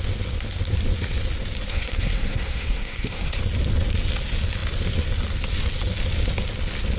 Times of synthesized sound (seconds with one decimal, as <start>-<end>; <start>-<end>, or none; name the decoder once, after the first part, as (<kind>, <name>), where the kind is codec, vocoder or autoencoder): 1.7-3.4 (codec, SNAC)